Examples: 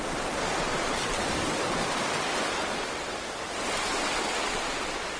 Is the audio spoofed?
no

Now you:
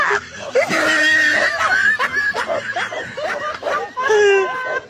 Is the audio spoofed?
no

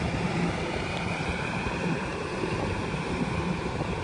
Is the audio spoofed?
yes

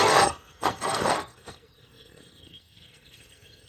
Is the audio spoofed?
yes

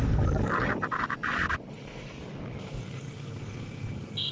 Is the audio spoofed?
no